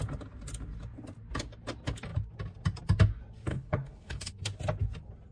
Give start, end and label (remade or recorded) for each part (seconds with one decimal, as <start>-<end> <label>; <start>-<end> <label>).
0.0-3.5 recorded; 3.5-4.3 remade; 4.3-5.3 recorded